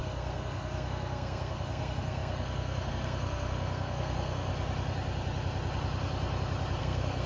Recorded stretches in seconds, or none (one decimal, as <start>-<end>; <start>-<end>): 4.5-6.8